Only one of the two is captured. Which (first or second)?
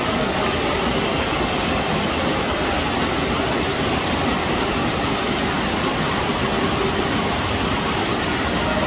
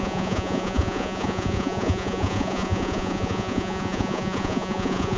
first